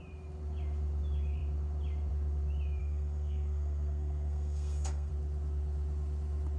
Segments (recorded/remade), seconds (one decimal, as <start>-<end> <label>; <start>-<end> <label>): 0.0-2.8 recorded; 2.8-5.1 remade; 5.1-6.6 recorded